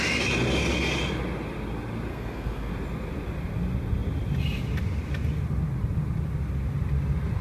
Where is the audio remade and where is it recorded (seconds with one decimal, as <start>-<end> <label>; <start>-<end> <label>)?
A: 0.0-2.1 recorded; 2.1-2.7 remade; 2.7-7.4 recorded